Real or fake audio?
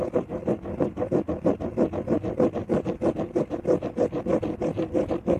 real